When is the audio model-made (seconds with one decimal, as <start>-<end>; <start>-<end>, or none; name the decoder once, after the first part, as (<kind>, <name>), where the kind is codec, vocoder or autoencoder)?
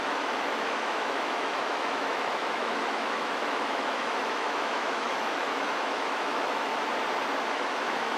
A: 0.0-6.7 (autoencoder, DAC-VAE); 7.5-8.2